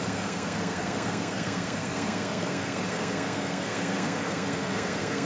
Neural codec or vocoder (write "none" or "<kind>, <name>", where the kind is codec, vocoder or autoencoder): codec, SNAC